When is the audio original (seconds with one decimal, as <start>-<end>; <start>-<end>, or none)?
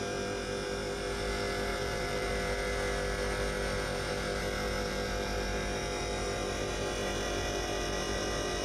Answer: 0.0-1.7; 2.3-8.6